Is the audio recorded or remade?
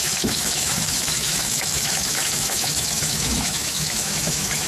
remade